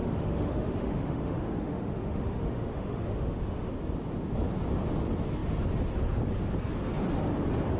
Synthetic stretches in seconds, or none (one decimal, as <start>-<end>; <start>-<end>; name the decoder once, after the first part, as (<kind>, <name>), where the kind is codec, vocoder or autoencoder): 0.0-3.7 (autoencoder, DAC-VAE)